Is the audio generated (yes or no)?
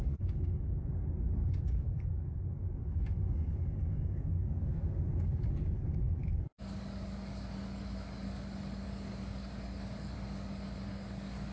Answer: yes